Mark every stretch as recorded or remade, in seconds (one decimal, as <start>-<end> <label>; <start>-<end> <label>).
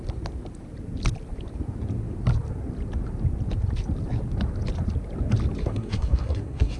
0.0-5.6 recorded; 5.6-6.8 remade